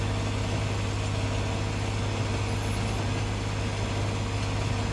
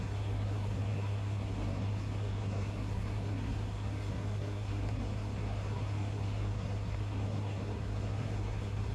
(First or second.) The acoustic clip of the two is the first